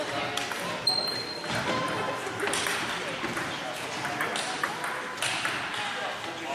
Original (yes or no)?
yes